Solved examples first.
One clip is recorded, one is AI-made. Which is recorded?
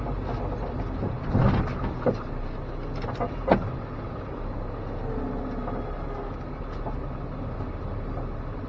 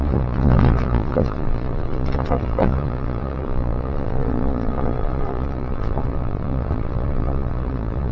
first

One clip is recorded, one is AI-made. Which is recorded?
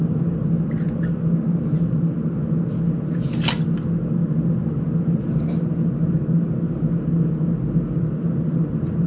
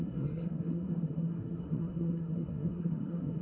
first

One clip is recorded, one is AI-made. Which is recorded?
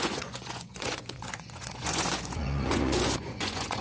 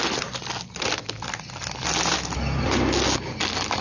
second